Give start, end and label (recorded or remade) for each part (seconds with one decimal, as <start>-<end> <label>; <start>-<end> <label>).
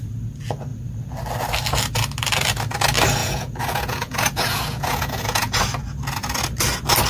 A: 0.0-3.2 recorded; 3.2-5.6 remade; 5.6-7.1 recorded